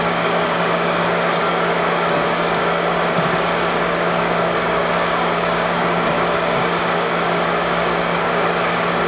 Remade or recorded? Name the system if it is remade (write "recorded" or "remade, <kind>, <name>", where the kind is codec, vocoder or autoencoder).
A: remade, codec, DAC